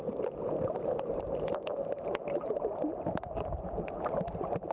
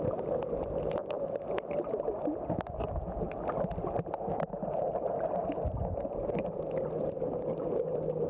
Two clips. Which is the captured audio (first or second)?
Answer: second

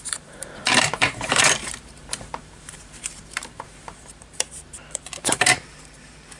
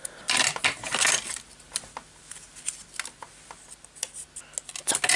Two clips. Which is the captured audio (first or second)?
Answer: second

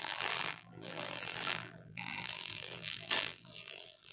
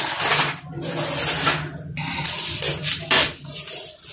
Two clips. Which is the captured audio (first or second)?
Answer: second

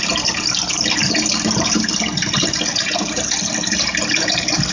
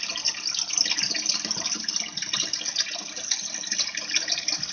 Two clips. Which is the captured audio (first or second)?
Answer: second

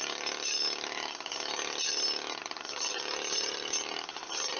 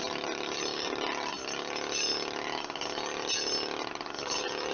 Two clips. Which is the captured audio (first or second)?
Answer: second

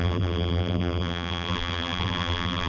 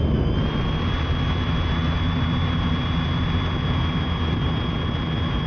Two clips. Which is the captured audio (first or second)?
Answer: second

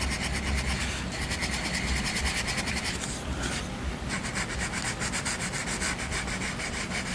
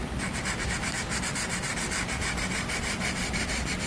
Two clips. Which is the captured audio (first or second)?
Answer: first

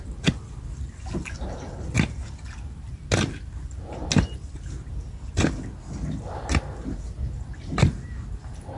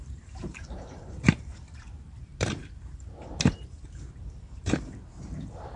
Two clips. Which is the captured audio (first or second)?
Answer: first